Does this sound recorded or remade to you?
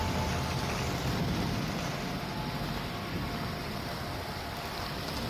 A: recorded